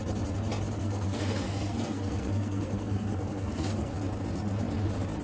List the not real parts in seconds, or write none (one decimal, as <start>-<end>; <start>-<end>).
0.8-3.9